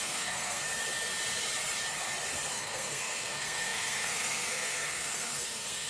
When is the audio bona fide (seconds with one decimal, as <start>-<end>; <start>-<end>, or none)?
0.6-2.5